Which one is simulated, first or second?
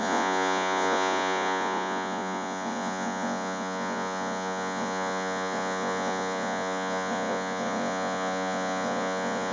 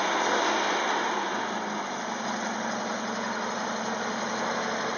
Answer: first